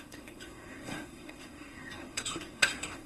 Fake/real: fake